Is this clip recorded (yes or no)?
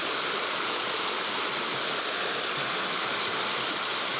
yes